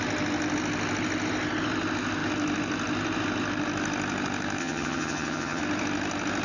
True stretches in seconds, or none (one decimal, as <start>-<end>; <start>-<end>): 0.0-4.6; 5.6-6.4